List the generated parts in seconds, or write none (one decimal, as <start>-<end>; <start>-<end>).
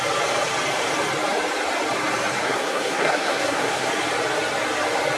2.4-3.9